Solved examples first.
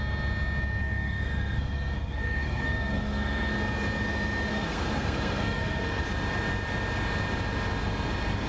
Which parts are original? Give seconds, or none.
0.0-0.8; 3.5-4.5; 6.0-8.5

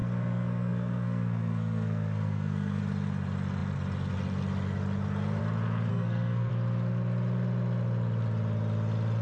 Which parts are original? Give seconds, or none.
2.8-5.9; 6.5-9.2

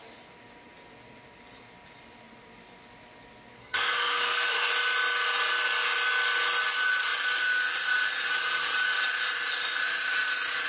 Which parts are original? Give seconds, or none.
0.0-3.6; 4.7-10.7

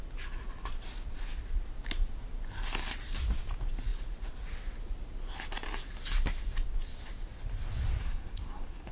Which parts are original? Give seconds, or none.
0.0-8.0

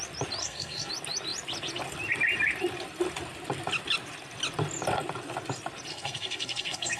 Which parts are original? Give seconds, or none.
0.0-0.4; 0.9-5.9

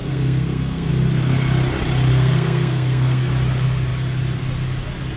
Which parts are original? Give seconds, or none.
0.9-2.1; 3.3-5.2

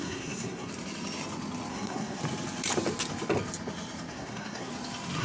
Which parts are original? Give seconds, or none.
0.7-1.7; 2.2-4.1; 4.7-5.2